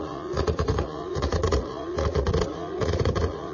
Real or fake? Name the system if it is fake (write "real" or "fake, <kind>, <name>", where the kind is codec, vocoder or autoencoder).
fake, vocoder, Vocos